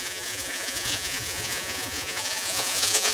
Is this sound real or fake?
fake